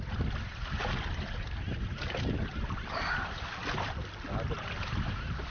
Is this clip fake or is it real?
real